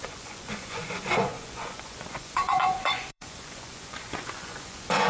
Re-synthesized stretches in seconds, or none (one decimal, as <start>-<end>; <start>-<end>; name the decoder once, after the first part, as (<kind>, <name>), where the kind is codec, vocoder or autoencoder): 0.0-5.1 (vocoder, Vocos)